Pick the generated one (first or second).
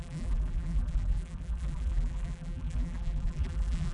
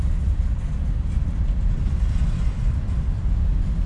first